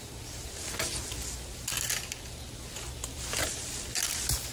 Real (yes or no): yes